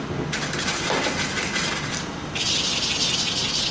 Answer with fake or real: real